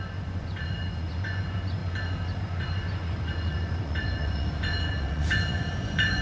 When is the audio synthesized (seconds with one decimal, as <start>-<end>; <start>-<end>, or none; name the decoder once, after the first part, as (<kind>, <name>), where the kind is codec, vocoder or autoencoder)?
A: 0.0-1.8 (vocoder, Vocos); 2.4-6.2